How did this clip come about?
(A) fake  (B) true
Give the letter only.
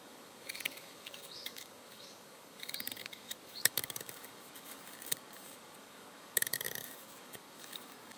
A